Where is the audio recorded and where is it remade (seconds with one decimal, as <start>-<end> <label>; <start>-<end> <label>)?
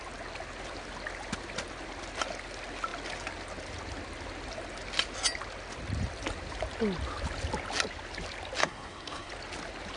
0.0-8.6 recorded; 8.6-9.3 remade; 9.3-10.0 recorded